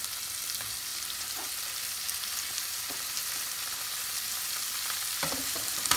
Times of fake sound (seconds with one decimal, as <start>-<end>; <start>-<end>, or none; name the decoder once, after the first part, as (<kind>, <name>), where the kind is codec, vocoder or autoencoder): 0.9-1.5 (vocoder, BigVGAN v2); 2.6-3.1